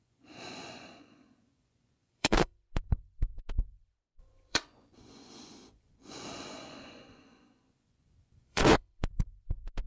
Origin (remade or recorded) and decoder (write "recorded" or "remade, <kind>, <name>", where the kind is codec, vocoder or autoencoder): remade, vocoder, Vocos